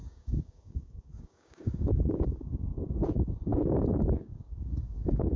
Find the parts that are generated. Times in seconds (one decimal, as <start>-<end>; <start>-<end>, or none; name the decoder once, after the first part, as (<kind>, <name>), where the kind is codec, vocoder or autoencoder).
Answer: 0.0-5.4 (codec, DAC)